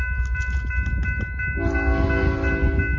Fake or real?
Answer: real